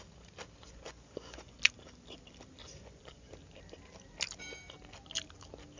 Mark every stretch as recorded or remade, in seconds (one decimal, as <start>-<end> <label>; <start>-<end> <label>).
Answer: 0.0-0.6 recorded; 0.6-1.6 remade; 1.6-2.6 recorded; 2.6-3.3 remade; 3.3-5.8 recorded